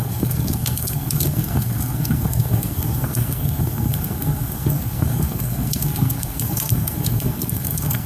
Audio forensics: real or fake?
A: fake